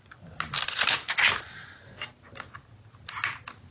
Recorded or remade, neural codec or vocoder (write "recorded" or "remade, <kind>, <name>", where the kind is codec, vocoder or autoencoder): recorded